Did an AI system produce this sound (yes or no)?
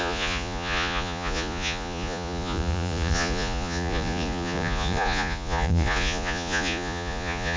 yes